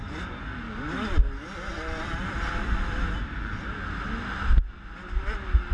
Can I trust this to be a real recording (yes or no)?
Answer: yes